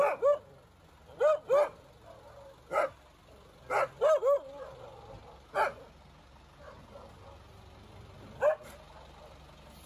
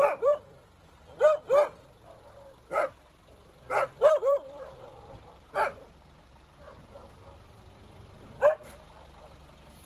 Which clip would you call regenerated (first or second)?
second